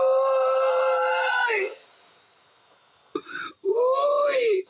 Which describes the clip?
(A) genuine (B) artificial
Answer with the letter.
A